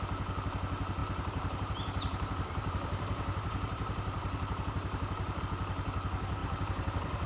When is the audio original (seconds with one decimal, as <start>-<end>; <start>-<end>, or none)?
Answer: 0.0-1.0; 5.4-6.4